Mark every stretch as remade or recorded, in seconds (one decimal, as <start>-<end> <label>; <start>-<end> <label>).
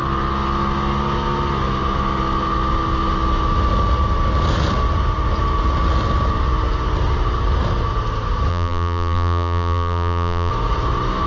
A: 0.0-8.5 recorded; 8.5-10.5 remade; 10.5-11.3 recorded